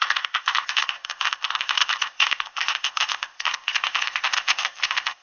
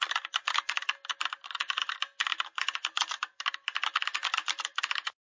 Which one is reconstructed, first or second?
first